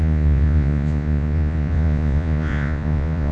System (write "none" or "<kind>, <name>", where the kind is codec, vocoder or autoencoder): vocoder, Vocos